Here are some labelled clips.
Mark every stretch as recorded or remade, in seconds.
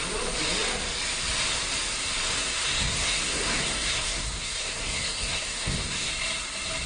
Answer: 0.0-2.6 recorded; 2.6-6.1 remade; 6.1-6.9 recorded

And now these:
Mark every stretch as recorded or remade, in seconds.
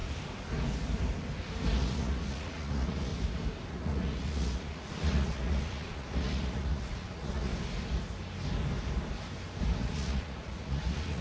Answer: 0.0-1.8 recorded; 1.8-3.1 remade; 3.1-3.7 recorded; 3.7-7.5 remade; 7.5-9.8 recorded; 9.8-11.2 remade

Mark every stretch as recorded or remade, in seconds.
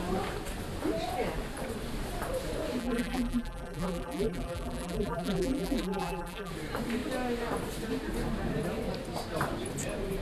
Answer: 0.0-2.8 recorded; 2.8-6.5 remade; 6.5-10.2 recorded